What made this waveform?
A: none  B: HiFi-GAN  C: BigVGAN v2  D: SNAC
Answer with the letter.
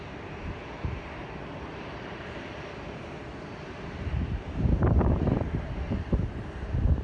C